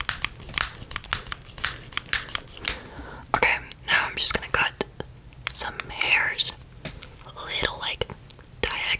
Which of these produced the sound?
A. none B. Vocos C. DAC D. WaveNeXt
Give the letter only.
A